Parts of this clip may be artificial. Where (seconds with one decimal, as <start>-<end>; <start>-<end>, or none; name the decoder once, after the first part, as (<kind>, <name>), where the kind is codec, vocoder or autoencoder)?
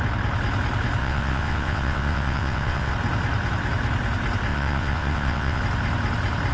1.0-2.9 (vocoder, WaveNeXt); 4.5-5.6